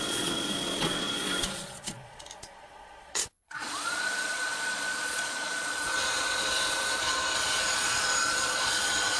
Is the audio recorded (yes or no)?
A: no